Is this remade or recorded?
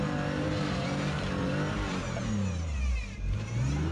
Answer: remade